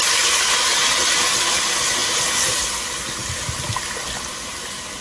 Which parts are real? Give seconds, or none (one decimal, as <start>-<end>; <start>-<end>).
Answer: 0.0-5.0